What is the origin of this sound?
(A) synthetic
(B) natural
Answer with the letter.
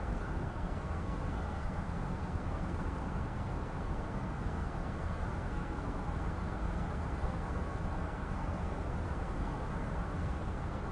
A